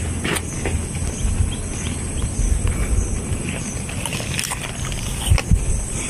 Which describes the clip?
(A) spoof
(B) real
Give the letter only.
B